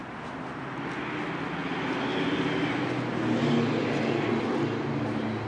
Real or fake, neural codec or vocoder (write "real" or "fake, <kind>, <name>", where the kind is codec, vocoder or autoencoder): real